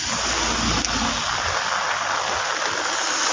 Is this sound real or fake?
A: real